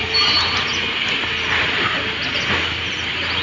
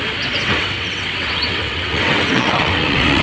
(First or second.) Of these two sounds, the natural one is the first